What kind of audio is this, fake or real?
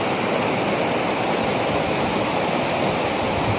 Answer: real